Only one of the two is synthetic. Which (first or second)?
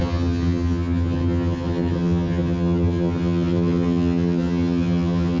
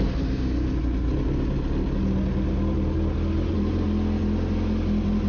first